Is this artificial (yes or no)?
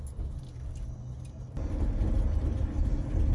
no